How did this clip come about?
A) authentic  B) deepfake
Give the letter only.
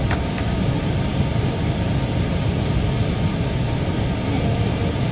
A